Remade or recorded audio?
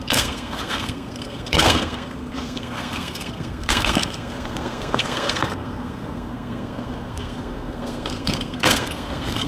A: remade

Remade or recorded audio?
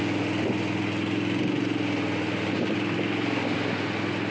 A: recorded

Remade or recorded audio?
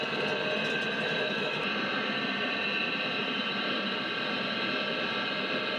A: recorded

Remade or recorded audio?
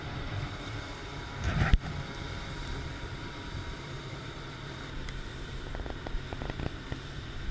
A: remade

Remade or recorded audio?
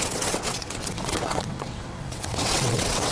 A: remade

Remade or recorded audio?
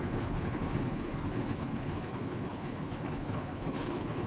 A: remade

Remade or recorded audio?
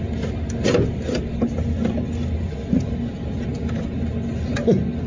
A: recorded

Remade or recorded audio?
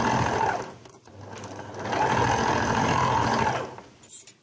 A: recorded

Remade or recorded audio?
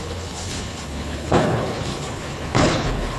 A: remade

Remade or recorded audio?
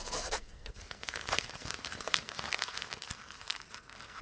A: remade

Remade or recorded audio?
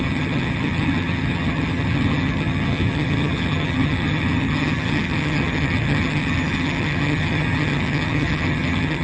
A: remade